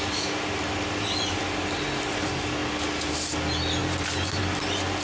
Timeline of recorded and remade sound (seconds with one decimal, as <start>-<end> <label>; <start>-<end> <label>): 0.0-3.8 recorded; 3.8-4.4 remade; 4.4-5.0 recorded